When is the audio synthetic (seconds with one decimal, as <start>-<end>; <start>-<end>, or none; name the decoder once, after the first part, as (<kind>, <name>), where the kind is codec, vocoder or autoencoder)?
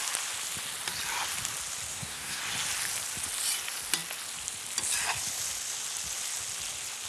1.9-2.4 (codec, SNAC)